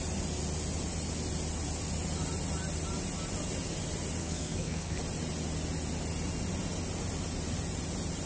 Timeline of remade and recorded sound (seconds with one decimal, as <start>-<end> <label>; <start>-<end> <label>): 0.0-4.2 recorded; 4.2-5.0 remade; 5.0-8.3 recorded